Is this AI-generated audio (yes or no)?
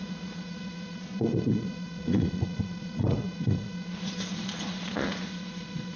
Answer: yes